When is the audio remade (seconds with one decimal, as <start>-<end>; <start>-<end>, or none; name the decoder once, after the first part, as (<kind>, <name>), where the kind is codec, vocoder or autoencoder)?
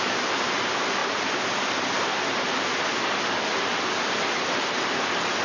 none